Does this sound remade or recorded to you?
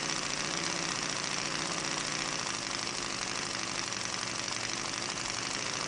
recorded